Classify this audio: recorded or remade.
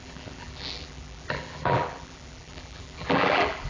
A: remade